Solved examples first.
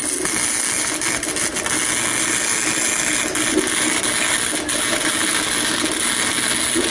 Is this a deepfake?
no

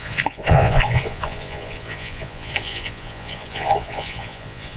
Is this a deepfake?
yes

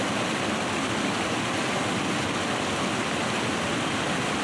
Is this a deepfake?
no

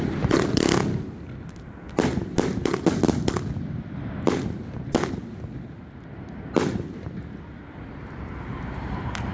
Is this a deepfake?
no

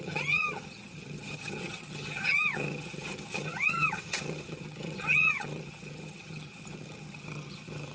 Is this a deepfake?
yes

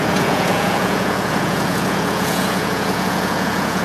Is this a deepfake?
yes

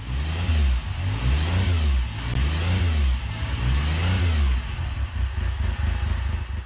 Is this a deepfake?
no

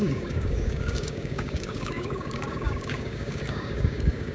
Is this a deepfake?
yes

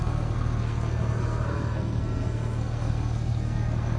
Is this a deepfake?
yes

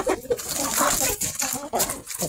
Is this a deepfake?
no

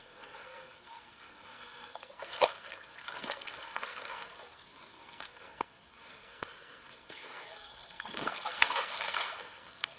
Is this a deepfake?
yes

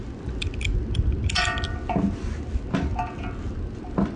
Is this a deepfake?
no